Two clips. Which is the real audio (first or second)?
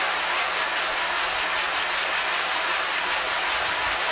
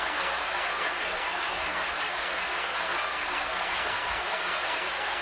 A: first